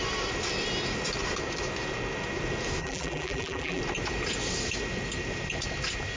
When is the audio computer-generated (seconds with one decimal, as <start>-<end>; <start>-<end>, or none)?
2.8-3.8